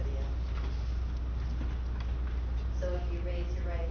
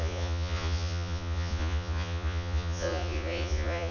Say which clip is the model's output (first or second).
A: second